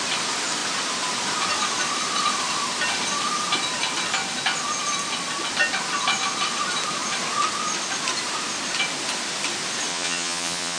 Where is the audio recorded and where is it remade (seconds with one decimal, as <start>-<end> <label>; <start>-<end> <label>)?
0.0-9.9 recorded; 9.9-10.8 remade